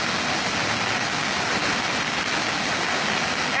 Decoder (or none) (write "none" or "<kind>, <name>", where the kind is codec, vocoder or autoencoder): none